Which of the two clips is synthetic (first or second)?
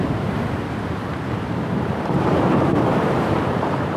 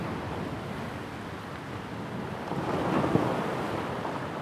first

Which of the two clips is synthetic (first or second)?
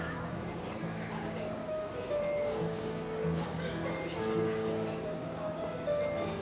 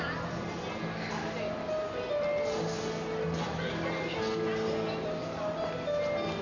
first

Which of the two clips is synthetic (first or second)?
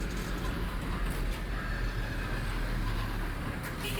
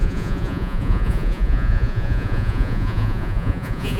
second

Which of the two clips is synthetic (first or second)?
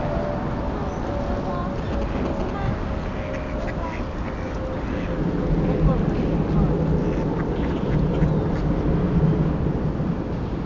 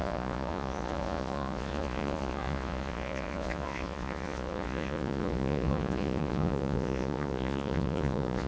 second